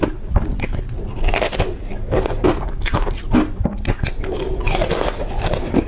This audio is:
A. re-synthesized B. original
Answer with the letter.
B